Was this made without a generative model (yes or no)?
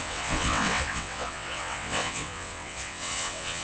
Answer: no